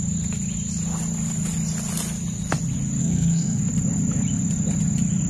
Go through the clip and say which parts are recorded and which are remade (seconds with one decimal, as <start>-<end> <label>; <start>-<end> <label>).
0.0-3.0 recorded; 3.0-3.6 remade; 3.6-5.3 recorded